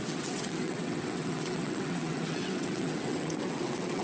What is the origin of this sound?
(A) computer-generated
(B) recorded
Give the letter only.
A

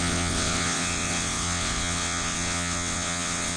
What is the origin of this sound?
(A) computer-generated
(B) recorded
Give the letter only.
A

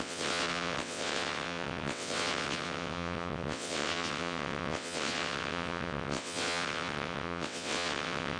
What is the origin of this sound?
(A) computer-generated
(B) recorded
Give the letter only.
A